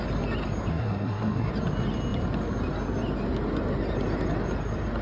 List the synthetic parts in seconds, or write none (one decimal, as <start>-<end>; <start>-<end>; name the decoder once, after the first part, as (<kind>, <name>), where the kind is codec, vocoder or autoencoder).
0.7-1.5 (codec, SNAC)